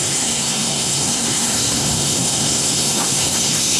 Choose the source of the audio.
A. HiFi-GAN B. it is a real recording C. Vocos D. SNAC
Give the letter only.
D